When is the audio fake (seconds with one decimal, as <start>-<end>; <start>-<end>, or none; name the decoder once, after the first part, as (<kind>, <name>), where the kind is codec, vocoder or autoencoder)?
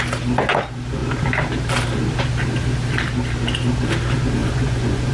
4.4-5.1 (vocoder, Vocos)